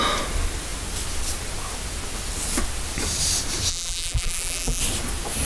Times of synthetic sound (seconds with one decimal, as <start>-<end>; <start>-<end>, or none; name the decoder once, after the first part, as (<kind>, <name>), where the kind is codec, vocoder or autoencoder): 3.7-4.8 (vocoder, BigVGAN v2)